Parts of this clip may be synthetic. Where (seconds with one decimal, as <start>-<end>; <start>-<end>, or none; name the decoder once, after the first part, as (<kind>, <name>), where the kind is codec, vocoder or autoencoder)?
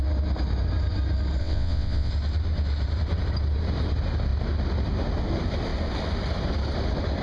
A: 1.4-2.1 (vocoder, WaveNeXt)